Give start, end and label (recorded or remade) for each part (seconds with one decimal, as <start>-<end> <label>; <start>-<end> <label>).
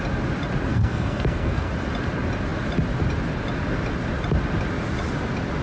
0.0-0.7 recorded; 0.7-1.7 remade; 1.7-5.6 recorded